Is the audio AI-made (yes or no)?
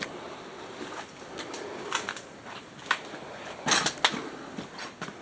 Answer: no